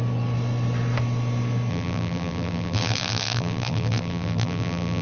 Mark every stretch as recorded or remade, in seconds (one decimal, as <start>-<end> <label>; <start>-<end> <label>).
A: 0.0-1.7 recorded; 1.7-5.0 remade